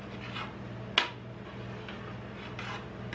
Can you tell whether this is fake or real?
real